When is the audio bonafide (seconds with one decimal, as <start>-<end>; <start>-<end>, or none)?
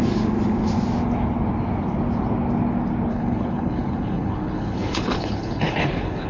0.0-3.1